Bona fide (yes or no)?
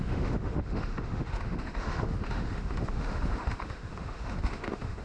no